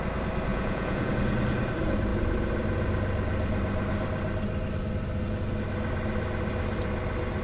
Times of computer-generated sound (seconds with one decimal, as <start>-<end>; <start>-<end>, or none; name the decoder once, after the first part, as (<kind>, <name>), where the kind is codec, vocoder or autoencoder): 0.5-1.1 (vocoder, Vocos)